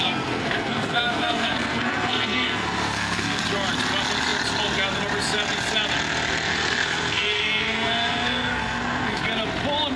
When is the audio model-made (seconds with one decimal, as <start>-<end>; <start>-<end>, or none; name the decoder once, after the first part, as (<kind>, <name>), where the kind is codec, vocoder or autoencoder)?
0.0-3.4 (codec, SNAC); 6.5-9.2